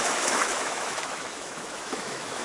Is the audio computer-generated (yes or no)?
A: yes